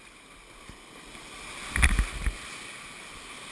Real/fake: real